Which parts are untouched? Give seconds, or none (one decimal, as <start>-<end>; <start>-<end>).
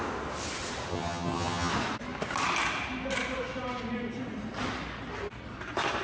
0.0-0.9; 1.7-6.0